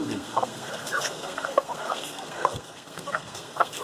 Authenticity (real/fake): fake